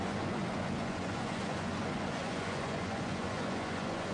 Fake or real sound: fake